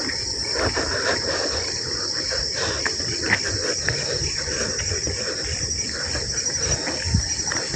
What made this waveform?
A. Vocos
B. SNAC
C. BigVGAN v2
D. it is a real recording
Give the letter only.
D